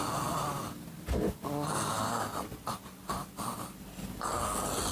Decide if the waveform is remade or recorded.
recorded